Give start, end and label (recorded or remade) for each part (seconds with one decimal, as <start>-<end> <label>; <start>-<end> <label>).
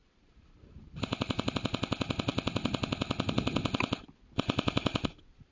0.0-1.5 remade; 1.5-5.5 recorded